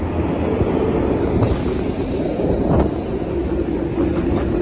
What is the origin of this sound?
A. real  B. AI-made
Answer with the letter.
A